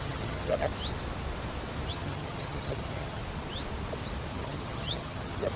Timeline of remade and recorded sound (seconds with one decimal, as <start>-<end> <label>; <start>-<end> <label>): 0.0-0.7 remade; 0.7-1.9 recorded; 1.9-3.2 remade; 3.2-4.3 recorded; 4.3-5.6 remade